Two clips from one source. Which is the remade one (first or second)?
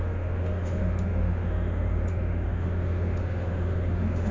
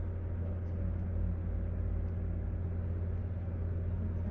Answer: first